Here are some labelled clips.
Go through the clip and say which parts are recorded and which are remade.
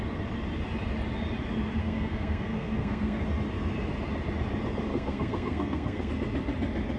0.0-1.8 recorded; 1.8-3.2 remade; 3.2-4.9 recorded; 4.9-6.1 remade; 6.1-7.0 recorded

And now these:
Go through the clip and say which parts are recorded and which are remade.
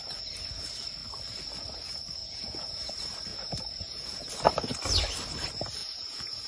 0.0-2.2 recorded; 2.2-2.9 remade; 2.9-3.3 recorded; 3.3-4.3 remade; 4.3-5.8 recorded; 5.8-6.5 remade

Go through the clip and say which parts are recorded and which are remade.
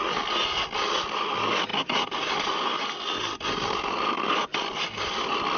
0.0-5.6 recorded